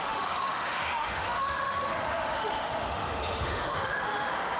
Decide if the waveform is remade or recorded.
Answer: remade